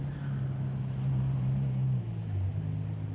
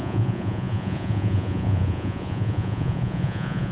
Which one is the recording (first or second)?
first